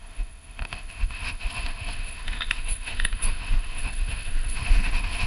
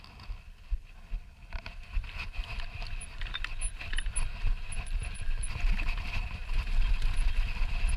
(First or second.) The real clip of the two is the second